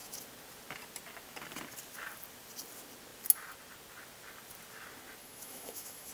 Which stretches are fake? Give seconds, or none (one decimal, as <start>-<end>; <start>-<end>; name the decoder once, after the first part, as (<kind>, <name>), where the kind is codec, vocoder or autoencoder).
5.2-6.1 (autoencoder, DAC-VAE)